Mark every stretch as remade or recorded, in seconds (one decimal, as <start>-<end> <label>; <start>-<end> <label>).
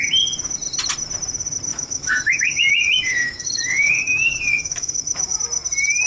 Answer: 0.0-1.7 recorded; 1.7-5.4 remade; 5.4-6.1 recorded